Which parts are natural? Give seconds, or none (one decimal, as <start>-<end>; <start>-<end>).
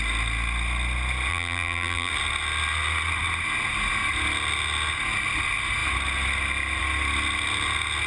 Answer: 0.0-1.3; 2.1-8.1